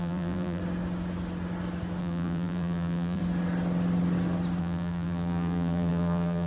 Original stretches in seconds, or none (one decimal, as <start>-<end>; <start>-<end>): 0.6-2.0; 3.2-4.6

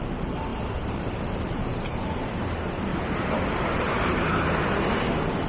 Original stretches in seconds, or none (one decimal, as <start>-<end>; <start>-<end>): 0.0-0.5; 1.1-1.7; 2.4-2.9; 4.6-5.5